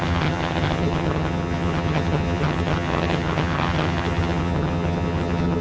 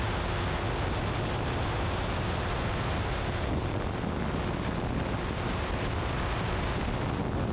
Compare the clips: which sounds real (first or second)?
second